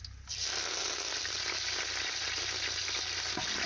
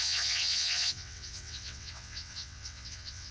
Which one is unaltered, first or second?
first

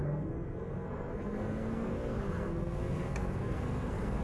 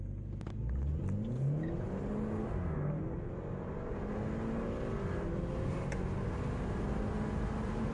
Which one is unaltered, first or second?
second